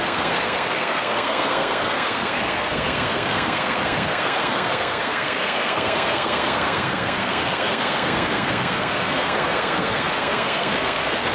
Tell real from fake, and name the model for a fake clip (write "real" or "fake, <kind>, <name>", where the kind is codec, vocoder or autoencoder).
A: fake, codec, SNAC